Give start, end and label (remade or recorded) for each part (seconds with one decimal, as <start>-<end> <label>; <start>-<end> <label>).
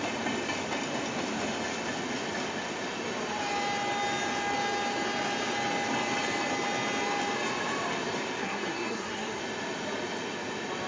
0.0-8.4 recorded; 8.4-9.4 remade; 9.4-10.9 recorded